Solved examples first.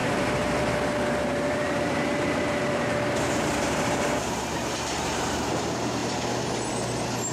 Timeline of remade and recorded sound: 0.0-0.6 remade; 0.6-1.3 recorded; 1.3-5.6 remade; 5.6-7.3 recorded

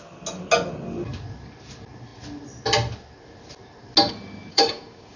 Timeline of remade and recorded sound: 0.0-4.5 recorded; 4.5-5.2 remade

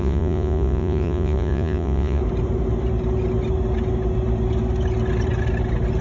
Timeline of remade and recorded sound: 0.0-2.2 remade; 2.2-6.0 recorded

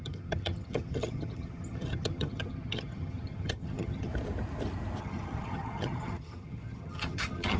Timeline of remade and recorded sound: 0.0-4.1 remade; 4.1-5.0 recorded; 5.0-7.6 remade

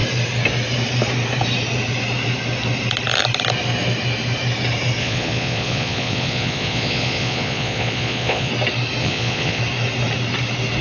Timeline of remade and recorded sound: 0.0-5.0 recorded; 5.0-8.5 remade; 8.5-9.0 recorded; 9.0-9.6 remade; 9.6-10.8 recorded

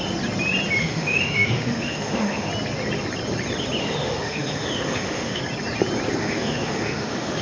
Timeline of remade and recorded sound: 0.0-0.8 recorded; 0.8-2.5 remade; 2.5-3.8 recorded; 3.8-5.4 remade; 5.4-6.2 recorded; 6.2-7.4 remade

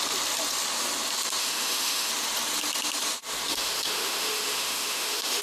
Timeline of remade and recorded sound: 0.0-1.4 recorded; 1.4-2.1 remade; 2.1-3.5 recorded; 3.5-5.4 remade

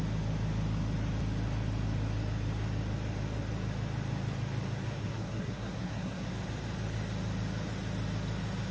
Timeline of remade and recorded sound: 0.0-5.0 recorded; 5.0-6.3 remade; 6.3-8.7 recorded